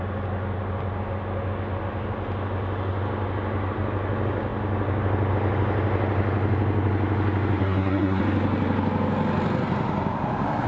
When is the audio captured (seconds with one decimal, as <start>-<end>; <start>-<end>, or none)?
0.0-7.6; 8.2-10.7